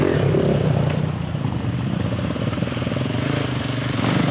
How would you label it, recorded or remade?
recorded